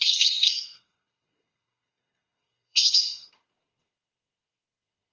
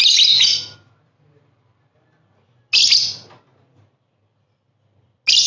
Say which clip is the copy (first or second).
first